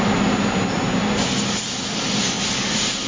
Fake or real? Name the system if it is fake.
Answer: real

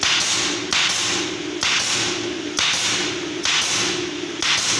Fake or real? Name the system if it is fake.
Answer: real